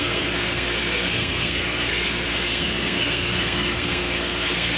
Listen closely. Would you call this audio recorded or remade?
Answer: remade